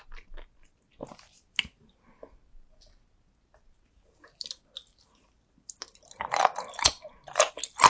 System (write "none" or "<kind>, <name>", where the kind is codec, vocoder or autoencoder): none